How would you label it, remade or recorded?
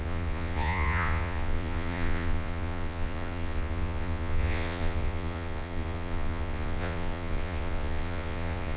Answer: remade